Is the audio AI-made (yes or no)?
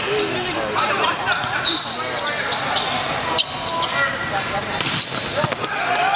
no